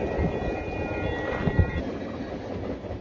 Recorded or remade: recorded